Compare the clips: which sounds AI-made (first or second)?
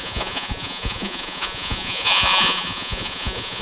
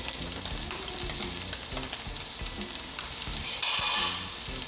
first